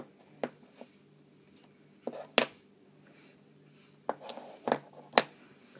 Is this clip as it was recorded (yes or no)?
yes